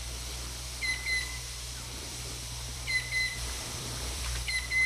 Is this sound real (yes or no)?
no